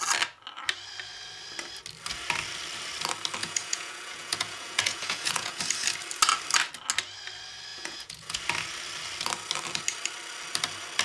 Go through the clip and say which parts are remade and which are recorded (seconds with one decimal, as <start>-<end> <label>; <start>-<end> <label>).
0.0-3.4 recorded; 3.4-5.6 remade; 5.6-7.7 recorded; 7.7-8.4 remade; 8.4-11.0 recorded